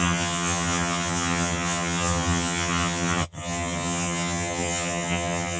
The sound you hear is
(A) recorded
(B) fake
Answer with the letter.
B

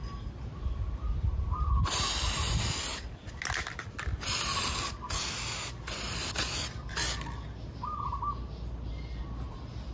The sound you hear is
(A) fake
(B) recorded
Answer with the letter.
B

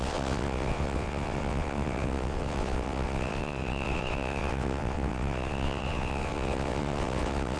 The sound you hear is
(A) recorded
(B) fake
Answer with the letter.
B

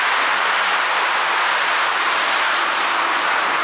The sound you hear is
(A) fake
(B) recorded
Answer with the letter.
B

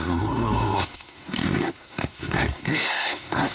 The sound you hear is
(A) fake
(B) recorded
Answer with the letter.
A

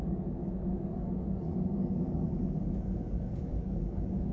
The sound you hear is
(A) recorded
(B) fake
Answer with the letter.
B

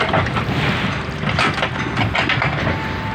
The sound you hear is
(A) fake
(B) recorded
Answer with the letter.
B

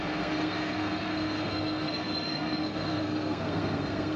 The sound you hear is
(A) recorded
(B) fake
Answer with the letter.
B